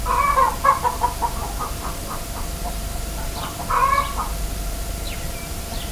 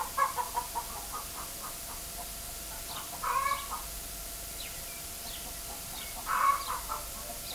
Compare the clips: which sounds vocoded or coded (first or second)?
second